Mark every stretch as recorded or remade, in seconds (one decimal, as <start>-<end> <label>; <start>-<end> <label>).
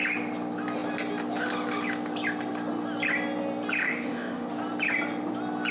0.0-3.8 recorded; 3.8-4.5 remade; 4.5-5.7 recorded